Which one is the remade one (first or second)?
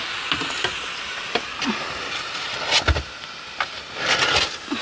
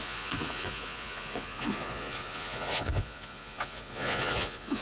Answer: second